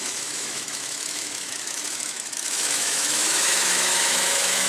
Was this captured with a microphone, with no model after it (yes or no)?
no